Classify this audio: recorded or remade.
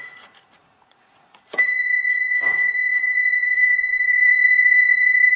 remade